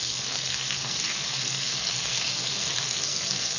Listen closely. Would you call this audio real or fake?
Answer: fake